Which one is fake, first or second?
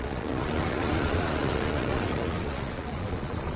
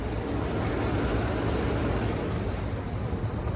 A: first